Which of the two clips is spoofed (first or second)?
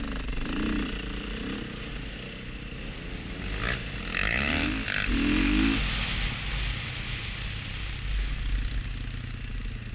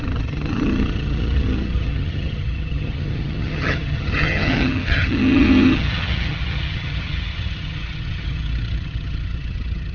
second